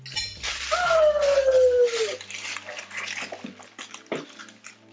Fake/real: real